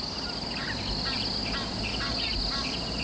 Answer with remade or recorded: recorded